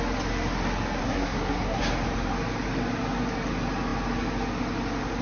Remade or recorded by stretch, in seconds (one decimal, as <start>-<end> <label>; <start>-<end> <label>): 0.0-1.0 recorded; 1.0-1.8 remade; 1.8-5.2 recorded